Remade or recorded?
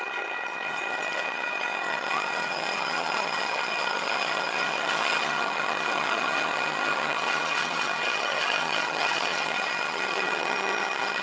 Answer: remade